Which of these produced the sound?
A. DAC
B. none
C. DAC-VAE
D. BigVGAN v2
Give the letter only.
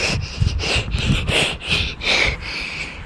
B